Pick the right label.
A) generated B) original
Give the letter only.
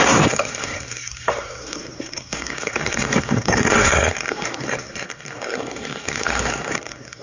A